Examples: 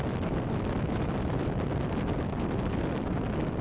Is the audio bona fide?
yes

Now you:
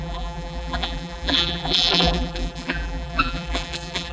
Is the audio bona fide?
no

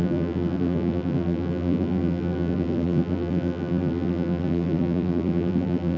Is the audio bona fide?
no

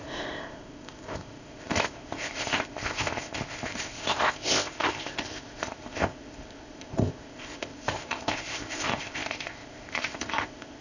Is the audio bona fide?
no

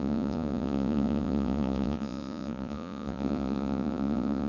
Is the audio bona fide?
no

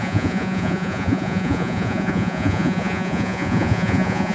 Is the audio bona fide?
no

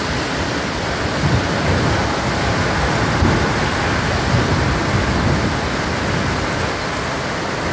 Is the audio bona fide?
yes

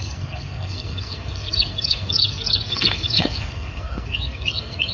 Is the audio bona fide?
no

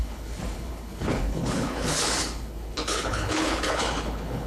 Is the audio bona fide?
no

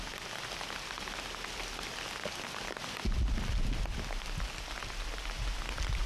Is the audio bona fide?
yes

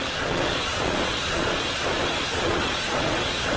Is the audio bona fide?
no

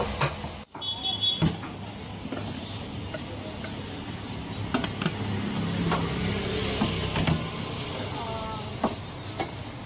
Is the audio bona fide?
yes